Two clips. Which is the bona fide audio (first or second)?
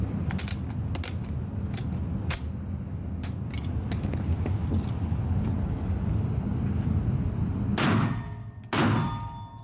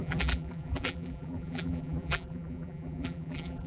first